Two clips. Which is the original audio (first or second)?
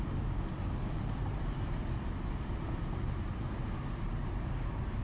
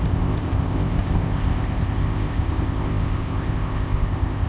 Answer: first